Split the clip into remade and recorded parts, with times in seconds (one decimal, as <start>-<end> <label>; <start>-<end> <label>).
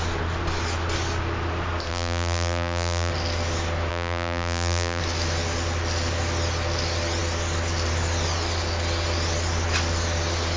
0.0-1.9 recorded; 1.9-3.1 remade; 3.1-3.9 recorded; 3.9-5.0 remade; 5.0-10.6 recorded